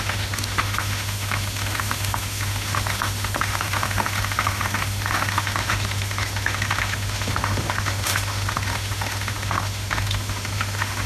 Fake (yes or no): yes